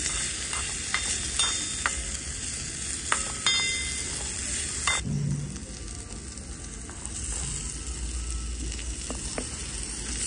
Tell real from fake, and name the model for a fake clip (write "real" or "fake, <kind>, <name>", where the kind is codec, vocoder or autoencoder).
real